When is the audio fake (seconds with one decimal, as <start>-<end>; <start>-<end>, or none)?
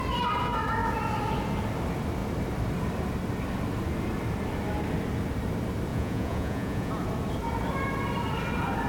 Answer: 5.9-6.9